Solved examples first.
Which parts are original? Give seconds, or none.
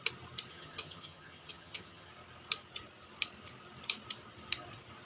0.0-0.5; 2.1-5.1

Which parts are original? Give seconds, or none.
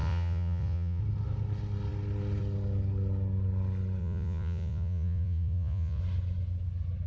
1.0-4.0; 6.0-7.1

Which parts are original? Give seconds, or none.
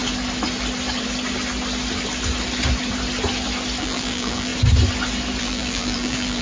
0.0-3.8; 4.5-5.4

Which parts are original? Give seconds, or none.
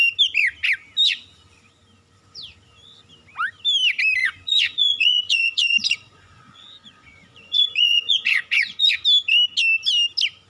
0.0-4.2; 8.9-10.5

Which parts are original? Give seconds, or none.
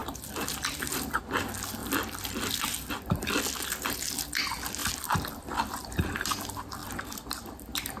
1.2-1.8; 3.1-8.0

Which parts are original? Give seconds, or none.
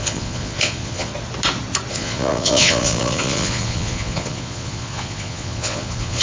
1.1-1.9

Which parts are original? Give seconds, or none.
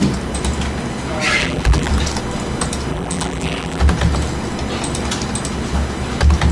0.0-1.4; 1.9-2.9; 3.8-6.5